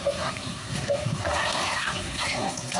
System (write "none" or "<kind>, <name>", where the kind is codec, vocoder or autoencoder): codec, SNAC